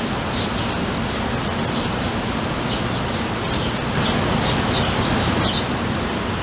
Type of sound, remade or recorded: recorded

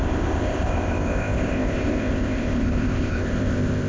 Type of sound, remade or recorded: remade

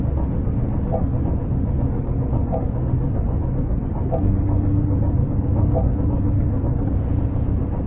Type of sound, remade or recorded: recorded